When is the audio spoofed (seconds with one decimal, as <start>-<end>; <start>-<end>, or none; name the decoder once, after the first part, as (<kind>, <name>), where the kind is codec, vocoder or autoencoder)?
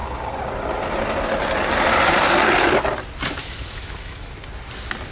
3.4-4.3 (autoencoder, DAC-VAE)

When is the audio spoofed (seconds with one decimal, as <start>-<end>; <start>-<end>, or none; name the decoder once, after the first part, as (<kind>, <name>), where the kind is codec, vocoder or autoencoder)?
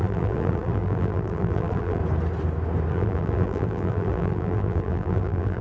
0.0-2.0 (vocoder, BigVGAN v2); 2.9-5.6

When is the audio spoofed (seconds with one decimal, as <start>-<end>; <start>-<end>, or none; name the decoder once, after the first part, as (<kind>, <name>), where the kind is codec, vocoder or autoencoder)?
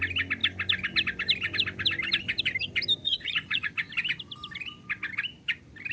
3.0-3.7 (vocoder, Vocos)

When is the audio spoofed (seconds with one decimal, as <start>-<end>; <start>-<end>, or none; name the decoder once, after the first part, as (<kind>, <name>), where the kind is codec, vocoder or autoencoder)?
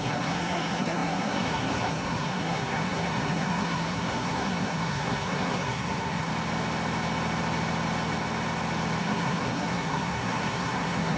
0.0-6.3 (codec, SNAC); 9.0-11.2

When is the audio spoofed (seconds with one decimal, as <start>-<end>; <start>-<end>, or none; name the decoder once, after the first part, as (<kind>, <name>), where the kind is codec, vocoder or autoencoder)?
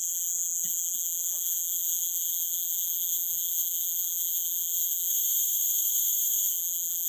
0.0-5.1 (vocoder, BigVGAN v2); 6.5-7.1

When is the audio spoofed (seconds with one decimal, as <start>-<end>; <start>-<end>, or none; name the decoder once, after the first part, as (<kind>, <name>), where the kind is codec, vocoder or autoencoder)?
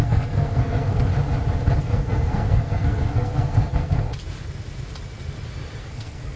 0.0-1.1 (codec, SNAC); 1.8-4.1; 5.8-6.4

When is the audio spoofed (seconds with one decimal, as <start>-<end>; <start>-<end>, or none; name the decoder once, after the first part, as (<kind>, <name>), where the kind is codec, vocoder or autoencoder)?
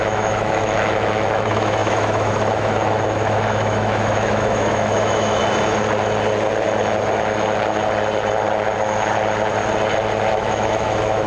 0.0-5.4 (autoencoder, DAC-VAE); 10.3-11.3